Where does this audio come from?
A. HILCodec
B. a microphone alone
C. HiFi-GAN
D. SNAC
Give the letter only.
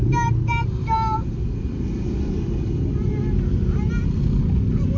B